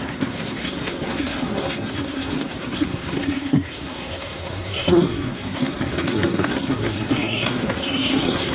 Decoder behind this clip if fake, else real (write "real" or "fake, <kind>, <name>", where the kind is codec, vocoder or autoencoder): fake, codec, SNAC